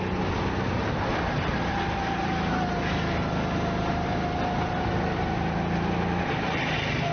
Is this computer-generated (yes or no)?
no